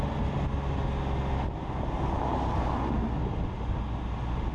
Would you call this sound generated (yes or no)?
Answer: no